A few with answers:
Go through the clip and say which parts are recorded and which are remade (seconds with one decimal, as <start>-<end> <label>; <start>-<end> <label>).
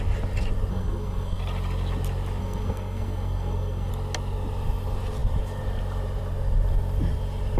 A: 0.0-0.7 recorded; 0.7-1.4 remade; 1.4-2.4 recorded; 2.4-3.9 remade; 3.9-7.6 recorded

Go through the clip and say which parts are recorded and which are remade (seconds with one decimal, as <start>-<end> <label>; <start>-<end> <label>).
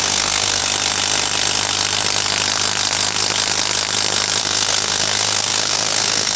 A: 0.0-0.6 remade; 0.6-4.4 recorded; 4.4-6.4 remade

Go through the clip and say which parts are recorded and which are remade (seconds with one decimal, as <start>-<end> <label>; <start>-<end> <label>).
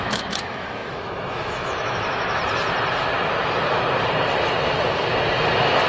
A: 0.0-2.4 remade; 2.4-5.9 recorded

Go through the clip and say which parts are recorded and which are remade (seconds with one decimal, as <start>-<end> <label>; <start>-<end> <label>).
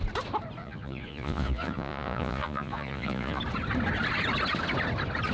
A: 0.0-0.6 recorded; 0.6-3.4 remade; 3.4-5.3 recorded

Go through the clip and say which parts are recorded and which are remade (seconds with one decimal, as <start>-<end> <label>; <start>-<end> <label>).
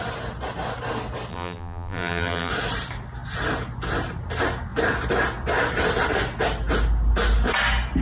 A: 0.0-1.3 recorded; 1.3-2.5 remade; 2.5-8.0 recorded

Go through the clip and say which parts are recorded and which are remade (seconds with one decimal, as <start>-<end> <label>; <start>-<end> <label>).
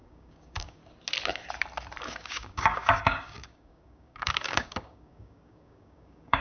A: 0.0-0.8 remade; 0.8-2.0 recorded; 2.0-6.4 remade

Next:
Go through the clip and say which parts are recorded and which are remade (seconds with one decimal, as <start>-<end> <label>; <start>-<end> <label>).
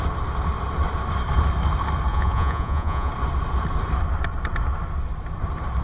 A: 0.0-2.1 recorded; 2.1-3.1 remade; 3.1-5.8 recorded